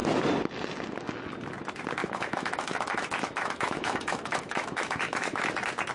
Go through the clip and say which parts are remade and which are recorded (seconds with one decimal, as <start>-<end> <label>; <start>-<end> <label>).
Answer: 0.0-2.0 recorded; 2.0-5.5 remade; 5.5-5.9 recorded